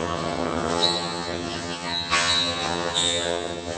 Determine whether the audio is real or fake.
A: fake